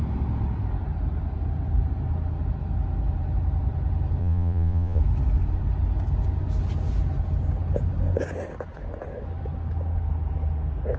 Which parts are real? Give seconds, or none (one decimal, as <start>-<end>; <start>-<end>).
0.0-4.2; 5.0-11.0